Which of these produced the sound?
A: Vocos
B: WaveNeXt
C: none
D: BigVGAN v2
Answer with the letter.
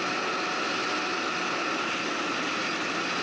C